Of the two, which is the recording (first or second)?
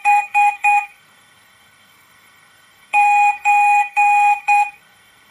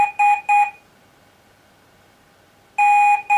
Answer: second